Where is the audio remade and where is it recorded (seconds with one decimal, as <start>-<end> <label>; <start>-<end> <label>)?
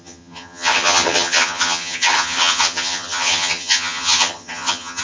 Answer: 0.0-5.0 remade